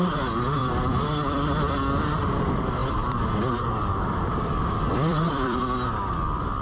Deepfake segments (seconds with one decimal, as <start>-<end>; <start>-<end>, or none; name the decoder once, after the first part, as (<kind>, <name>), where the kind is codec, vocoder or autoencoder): 0.6-1.7 (vocoder, BigVGAN v2); 2.8-5.6